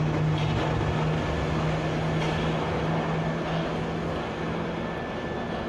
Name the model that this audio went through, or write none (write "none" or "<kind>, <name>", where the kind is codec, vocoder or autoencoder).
none